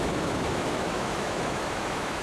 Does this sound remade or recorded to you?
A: remade